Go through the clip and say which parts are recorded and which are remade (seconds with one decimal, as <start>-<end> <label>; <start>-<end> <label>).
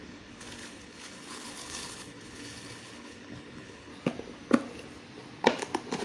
0.0-3.9 remade; 3.9-6.0 recorded